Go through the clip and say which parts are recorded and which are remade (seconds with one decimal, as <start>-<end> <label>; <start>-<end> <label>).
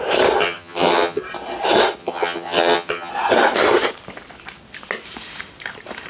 0.0-0.4 recorded; 0.4-1.2 remade; 1.2-2.0 recorded; 2.0-3.1 remade; 3.1-6.1 recorded